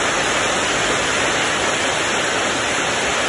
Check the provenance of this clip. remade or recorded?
recorded